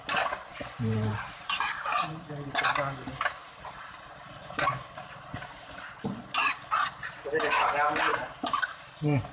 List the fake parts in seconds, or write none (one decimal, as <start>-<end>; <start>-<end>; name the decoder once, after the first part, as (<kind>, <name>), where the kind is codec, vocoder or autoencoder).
0.5-2.3 (vocoder, BigVGAN v2); 3.4-6.2; 8.1-9.3